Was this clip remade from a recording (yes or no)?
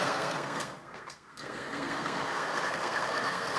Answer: yes